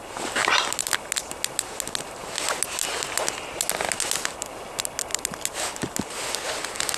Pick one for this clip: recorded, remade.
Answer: recorded